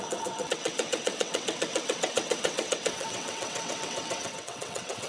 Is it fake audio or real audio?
fake